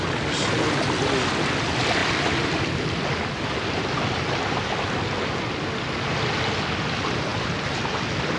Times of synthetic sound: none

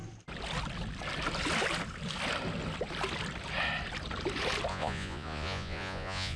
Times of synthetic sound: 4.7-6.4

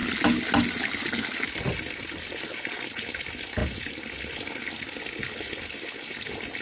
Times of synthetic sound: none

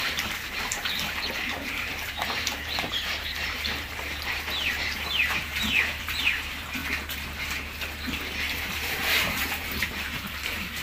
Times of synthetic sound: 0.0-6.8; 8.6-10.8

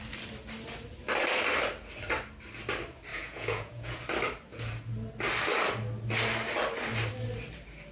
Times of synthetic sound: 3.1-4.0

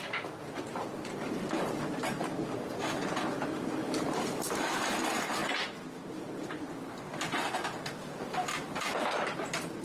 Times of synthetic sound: 0.0-2.2; 3.2-5.4; 6.1-9.8

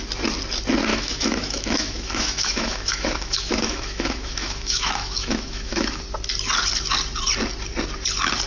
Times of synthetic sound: 0.9-6.0

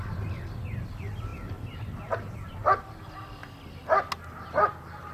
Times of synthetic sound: none